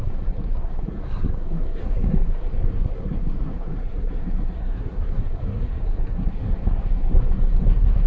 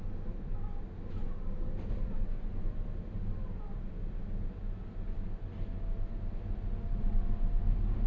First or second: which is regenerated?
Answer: first